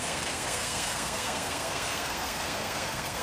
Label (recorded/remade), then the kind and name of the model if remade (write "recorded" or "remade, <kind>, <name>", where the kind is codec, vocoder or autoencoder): remade, codec, SNAC